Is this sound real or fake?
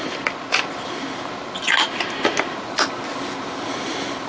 real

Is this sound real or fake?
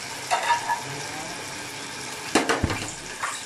real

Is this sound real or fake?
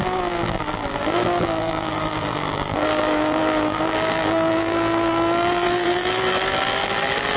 fake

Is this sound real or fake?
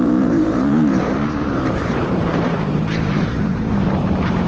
fake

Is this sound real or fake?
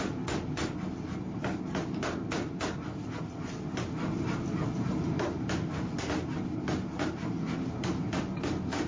real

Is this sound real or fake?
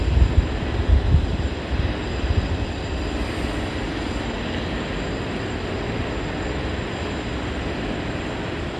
real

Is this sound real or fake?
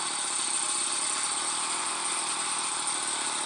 real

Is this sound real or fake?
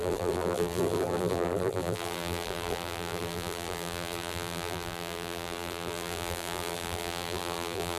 fake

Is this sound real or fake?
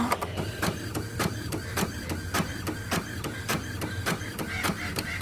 fake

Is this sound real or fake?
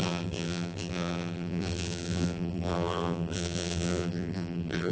fake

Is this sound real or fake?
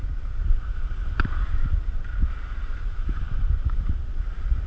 fake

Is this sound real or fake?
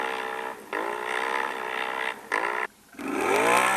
real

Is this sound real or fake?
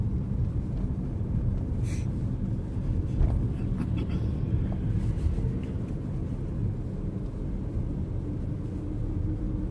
real